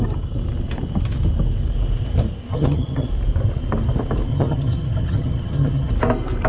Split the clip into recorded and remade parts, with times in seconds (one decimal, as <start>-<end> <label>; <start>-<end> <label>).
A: 0.0-2.5 recorded; 2.5-3.1 remade; 3.1-4.3 recorded; 4.3-5.9 remade; 5.9-6.5 recorded